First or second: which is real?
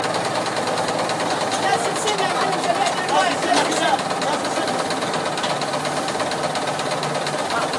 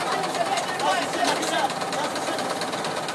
first